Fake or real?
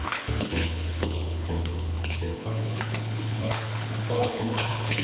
fake